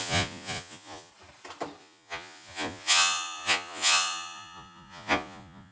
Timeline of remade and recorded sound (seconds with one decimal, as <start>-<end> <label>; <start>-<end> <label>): 0.0-1.1 remade; 1.1-1.8 recorded; 1.8-5.7 remade